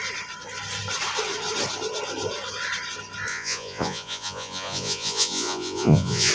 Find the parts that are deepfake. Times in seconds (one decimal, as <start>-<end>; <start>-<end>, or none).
3.3-6.3